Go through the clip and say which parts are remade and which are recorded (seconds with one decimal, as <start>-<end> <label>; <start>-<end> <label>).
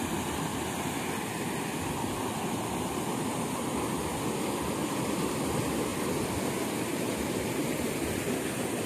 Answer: 0.0-8.9 recorded